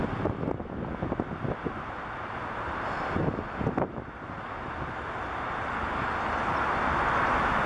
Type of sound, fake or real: real